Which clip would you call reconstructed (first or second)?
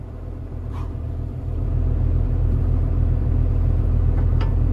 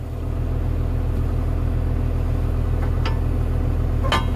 first